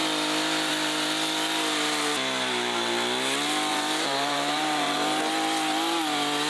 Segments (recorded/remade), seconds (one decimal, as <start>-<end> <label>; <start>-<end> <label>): 0.0-3.7 recorded; 3.7-5.2 remade; 5.2-6.5 recorded